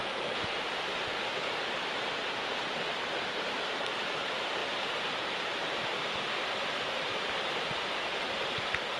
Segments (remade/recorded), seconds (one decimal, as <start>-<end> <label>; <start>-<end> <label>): 0.0-1.6 recorded; 1.6-5.5 remade; 5.5-9.0 recorded